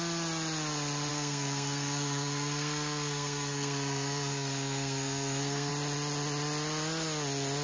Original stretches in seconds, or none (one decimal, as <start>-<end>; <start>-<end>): 0.0-1.1; 5.7-7.6